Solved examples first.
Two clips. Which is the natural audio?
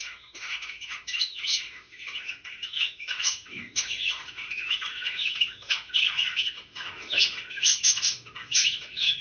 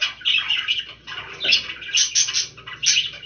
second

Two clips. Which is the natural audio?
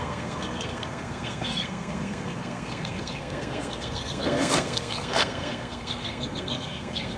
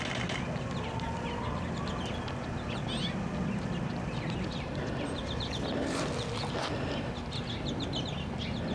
second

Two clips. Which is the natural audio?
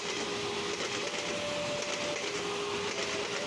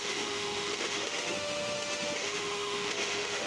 first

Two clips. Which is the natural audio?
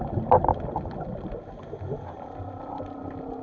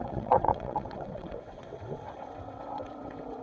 first